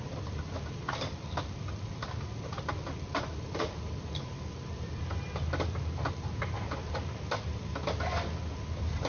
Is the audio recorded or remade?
recorded